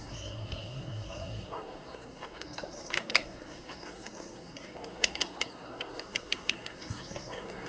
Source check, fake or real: fake